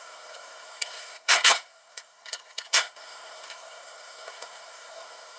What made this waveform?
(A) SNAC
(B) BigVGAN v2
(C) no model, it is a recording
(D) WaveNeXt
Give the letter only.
A